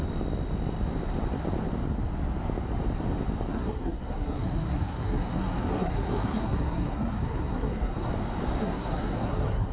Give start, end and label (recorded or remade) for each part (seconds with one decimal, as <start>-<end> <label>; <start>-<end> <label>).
0.0-3.5 recorded; 3.5-8.1 remade; 8.1-8.6 recorded; 8.6-9.7 remade